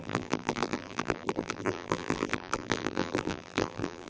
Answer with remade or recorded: remade